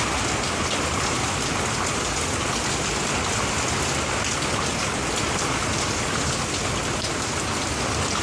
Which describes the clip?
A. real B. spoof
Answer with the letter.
A